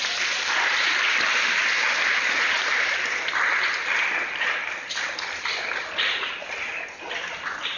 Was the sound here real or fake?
real